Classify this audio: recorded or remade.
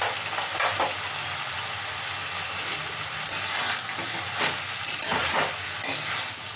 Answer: recorded